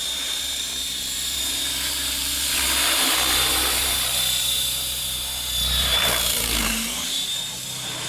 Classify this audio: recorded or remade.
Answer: remade